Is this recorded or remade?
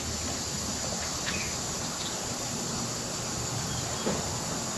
recorded